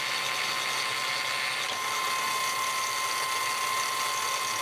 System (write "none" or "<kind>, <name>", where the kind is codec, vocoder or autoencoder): none